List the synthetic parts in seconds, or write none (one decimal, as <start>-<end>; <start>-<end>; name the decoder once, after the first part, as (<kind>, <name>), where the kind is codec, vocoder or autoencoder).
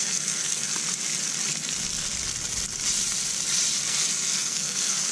0.0-0.7 (codec, SNAC); 3.8-5.1